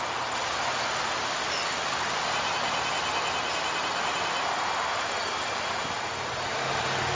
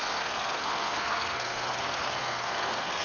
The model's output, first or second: second